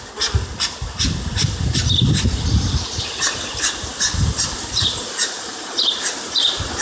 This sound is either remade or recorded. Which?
recorded